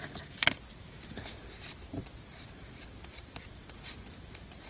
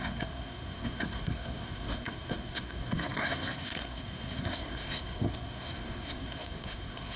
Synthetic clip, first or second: second